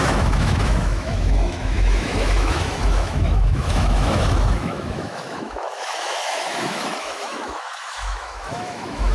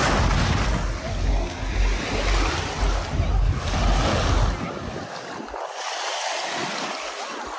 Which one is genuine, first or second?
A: second